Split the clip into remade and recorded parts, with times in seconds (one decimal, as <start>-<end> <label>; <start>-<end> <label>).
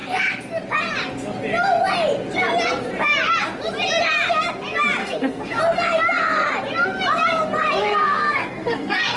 0.0-5.0 recorded; 5.0-5.6 remade; 5.6-7.8 recorded; 7.8-9.2 remade